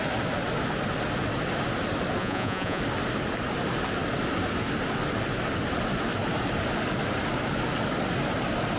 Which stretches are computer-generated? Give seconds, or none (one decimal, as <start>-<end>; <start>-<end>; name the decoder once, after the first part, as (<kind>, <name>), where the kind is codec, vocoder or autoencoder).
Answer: 2.2-2.8 (vocoder, Vocos)